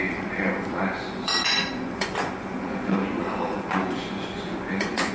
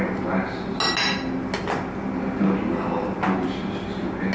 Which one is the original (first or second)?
second